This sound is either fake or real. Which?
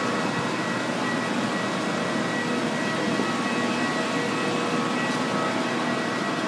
real